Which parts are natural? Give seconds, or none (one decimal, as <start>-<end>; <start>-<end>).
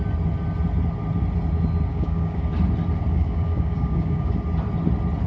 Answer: 0.0-1.9; 2.5-3.1; 4.3-5.3